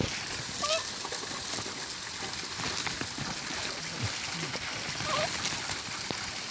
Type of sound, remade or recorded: recorded